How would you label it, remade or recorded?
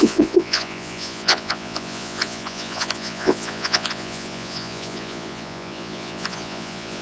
remade